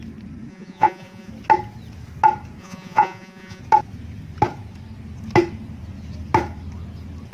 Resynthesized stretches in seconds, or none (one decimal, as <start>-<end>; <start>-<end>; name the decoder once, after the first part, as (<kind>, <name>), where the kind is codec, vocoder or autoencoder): 0.5-1.3 (vocoder, Vocos); 2.6-3.6

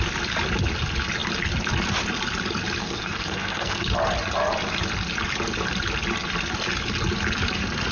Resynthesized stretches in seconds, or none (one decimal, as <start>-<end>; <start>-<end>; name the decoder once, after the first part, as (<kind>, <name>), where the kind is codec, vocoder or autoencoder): 2.8-3.8 (codec, SNAC)

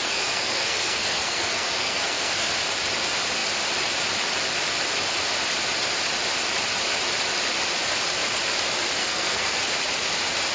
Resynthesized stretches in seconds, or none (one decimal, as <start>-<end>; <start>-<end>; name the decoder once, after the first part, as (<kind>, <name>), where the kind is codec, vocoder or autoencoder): 0.0-2.5 (codec, SNAC); 9.0-9.6

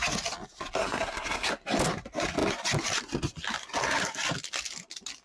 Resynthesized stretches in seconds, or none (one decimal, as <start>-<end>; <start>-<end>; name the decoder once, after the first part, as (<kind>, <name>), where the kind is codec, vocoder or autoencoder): 0.8-1.5 (codec, SNAC)

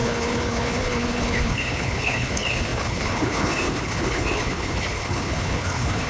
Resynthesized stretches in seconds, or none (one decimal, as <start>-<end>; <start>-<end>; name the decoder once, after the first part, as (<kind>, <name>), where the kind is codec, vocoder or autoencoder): 0.0-6.1 (codec, HILCodec)

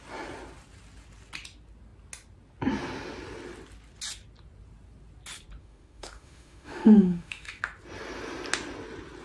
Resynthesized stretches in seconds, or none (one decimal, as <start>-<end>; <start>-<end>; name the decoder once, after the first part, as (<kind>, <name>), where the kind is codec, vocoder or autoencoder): 5.6-7.6 (autoencoder, DAC-VAE)